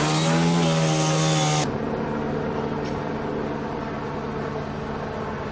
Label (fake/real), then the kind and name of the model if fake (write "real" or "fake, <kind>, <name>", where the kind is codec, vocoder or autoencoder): real